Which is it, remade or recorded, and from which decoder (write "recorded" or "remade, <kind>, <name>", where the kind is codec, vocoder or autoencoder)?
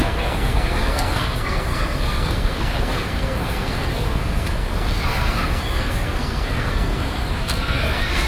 remade, codec, SNAC